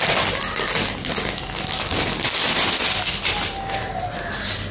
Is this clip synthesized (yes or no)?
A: no